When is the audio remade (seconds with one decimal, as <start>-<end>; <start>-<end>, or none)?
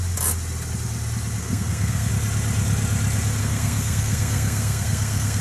1.4-2.1; 3.4-5.4